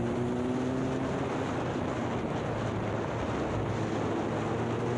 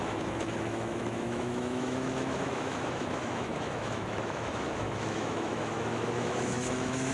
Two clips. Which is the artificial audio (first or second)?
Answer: second